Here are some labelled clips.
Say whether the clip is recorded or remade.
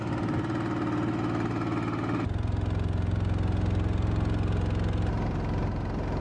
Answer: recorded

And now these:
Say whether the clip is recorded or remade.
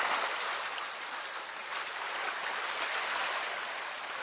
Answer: recorded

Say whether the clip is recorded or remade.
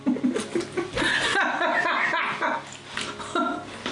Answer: recorded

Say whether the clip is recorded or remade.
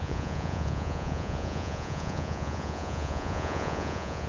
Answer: remade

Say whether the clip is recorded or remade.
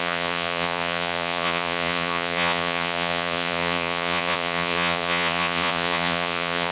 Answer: remade